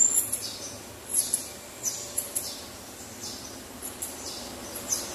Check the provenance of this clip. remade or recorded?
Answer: recorded